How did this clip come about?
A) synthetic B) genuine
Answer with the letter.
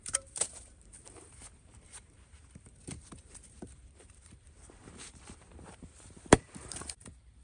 A